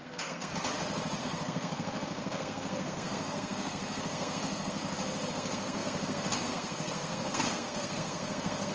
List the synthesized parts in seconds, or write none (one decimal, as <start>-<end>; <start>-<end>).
0.0-0.5; 1.2-4.8; 5.3-8.7